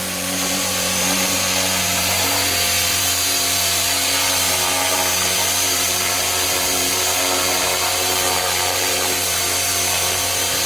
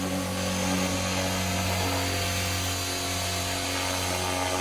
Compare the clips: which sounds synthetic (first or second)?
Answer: first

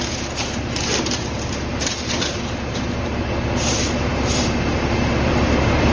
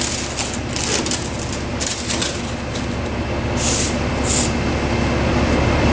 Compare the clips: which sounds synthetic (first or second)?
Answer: first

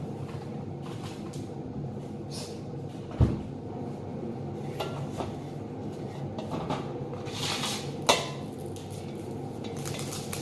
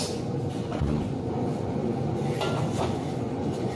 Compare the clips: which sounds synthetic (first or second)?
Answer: second